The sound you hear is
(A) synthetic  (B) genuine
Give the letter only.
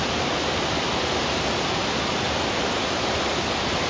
B